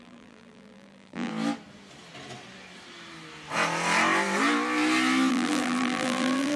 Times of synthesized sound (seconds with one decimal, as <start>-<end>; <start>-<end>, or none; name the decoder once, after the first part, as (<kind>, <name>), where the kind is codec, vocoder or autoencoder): 0.0-1.3 (vocoder, BigVGAN v2); 5.3-6.6